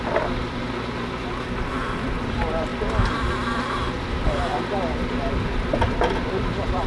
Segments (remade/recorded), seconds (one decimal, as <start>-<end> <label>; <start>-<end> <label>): 0.0-2.7 remade; 2.7-5.1 recorded; 5.1-6.9 remade